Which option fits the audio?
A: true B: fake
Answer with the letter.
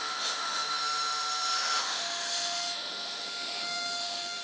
B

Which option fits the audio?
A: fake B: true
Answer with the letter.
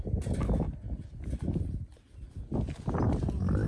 B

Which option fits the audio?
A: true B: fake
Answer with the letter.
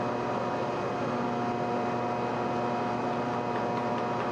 A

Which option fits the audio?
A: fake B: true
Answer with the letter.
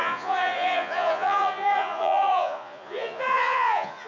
A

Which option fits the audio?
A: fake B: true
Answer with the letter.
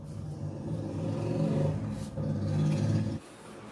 B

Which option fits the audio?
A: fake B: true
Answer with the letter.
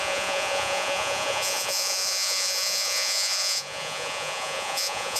A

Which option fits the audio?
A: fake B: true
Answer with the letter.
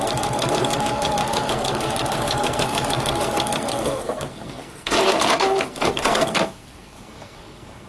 A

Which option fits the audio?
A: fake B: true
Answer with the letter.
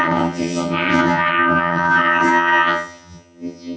A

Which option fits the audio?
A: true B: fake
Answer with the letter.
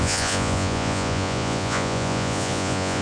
B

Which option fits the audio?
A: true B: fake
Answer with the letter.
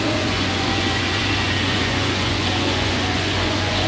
B